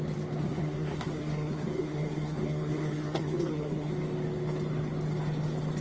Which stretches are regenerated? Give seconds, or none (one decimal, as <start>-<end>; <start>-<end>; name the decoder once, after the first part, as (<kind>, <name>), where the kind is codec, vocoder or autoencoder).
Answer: 0.4-3.9 (codec, SNAC)